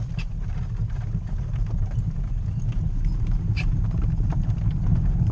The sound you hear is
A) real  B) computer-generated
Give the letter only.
A